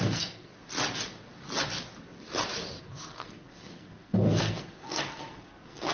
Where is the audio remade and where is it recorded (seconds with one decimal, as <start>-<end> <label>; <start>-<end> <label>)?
0.0-0.5 remade; 0.5-2.8 recorded; 2.8-5.9 remade